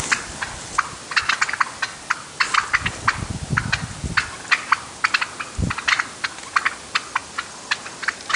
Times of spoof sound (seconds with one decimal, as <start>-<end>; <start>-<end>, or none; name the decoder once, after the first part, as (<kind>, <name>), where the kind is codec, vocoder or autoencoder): none